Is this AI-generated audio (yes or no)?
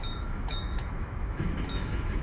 yes